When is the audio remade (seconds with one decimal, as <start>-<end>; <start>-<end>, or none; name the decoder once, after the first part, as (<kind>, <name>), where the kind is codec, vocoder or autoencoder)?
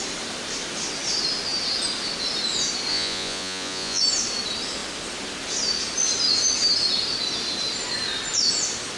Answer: 2.9-4.0 (vocoder, Vocos)